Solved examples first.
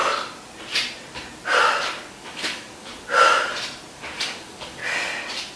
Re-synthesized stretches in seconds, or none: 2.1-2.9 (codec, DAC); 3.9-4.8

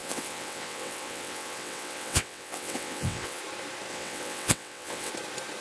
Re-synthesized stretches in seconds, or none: 0.0-3.4 (vocoder, WaveNeXt); 3.9-5.1

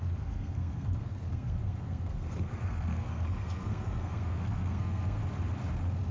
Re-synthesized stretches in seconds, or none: 0.0-5.2 (codec, SNAC)

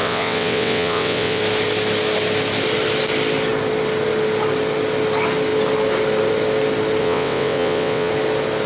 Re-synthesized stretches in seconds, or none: 0.0-1.4 (vocoder, WaveNeXt); 7.0-8.1